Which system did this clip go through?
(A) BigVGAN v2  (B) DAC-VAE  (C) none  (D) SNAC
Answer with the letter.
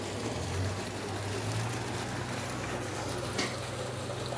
C